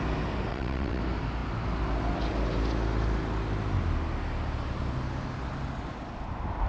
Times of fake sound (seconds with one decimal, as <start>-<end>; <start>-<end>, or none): 0.5-1.0